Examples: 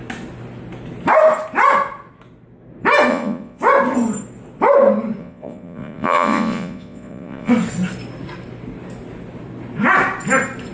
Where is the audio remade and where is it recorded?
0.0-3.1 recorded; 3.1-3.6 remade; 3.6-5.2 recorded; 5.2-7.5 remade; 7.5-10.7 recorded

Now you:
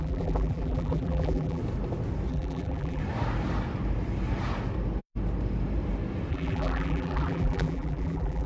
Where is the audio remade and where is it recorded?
0.0-1.6 remade; 1.6-2.3 recorded; 2.3-3.0 remade; 3.0-6.3 recorded; 6.3-8.5 remade

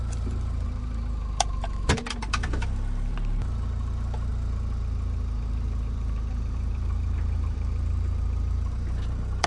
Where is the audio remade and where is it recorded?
0.0-4.3 remade; 4.3-5.4 recorded; 5.4-9.5 remade

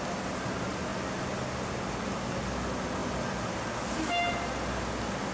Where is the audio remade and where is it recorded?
0.0-5.3 recorded